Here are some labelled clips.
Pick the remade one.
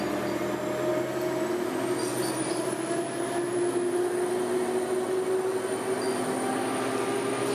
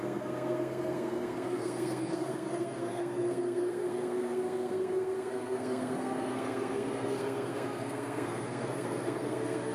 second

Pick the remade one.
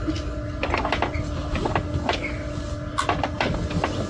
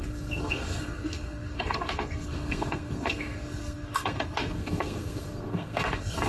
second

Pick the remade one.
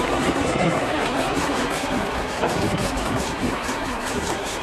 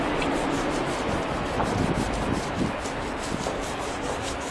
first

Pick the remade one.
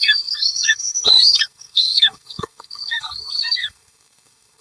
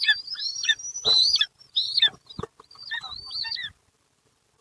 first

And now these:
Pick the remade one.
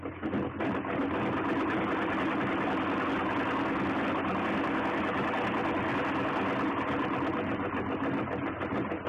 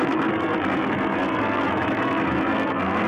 second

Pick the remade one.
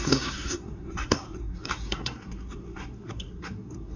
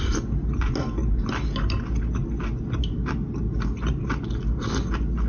first